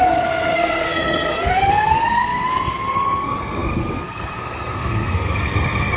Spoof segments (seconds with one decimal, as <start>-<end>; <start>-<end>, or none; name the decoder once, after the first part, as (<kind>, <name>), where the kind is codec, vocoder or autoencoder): 0.0-6.0 (codec, SNAC)